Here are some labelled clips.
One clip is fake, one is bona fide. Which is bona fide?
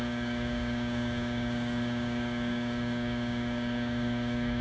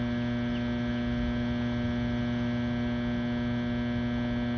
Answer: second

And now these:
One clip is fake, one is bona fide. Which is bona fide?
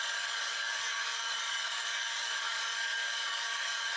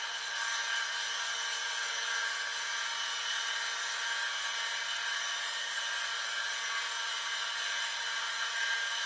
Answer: second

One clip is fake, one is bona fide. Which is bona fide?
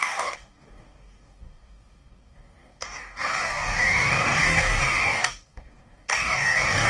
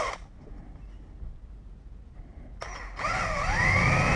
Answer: second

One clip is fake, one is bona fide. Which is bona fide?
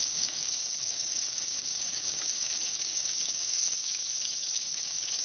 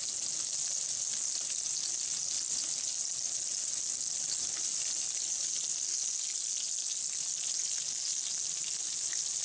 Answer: second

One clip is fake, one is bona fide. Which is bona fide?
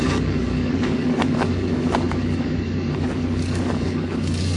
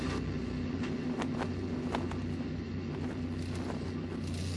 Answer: second